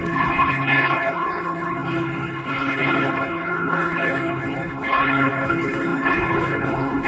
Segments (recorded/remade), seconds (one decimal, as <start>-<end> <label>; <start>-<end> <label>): 0.0-7.1 remade